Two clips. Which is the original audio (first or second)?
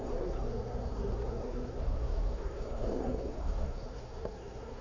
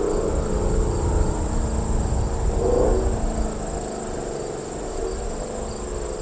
second